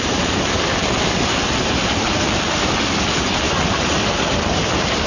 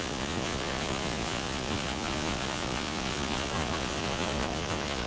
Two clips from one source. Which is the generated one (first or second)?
second